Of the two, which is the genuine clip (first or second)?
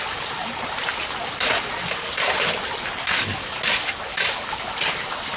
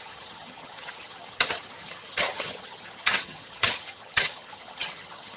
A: first